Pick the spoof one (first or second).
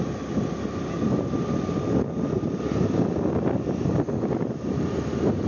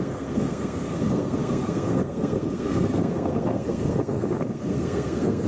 second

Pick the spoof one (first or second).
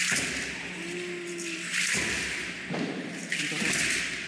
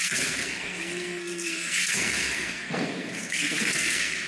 second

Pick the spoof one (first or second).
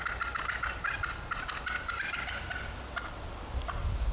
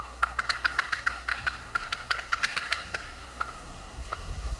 second